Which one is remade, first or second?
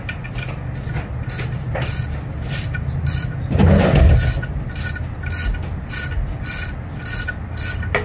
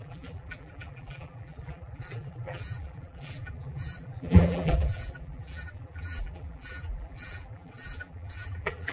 second